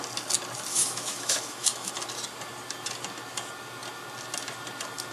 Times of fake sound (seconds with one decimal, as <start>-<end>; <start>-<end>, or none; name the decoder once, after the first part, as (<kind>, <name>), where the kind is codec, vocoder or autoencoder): 0.7-1.9 (autoencoder, DAC-VAE)